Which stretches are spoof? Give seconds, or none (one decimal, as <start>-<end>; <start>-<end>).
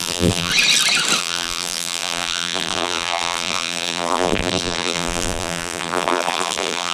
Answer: 0.0-0.5; 1.2-6.9